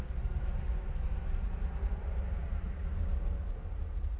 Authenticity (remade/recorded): recorded